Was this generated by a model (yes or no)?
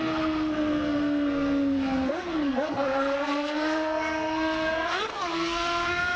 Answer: yes